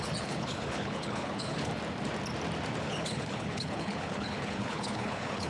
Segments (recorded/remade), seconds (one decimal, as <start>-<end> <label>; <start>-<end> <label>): 0.0-1.7 remade; 1.7-2.8 recorded; 2.8-5.5 remade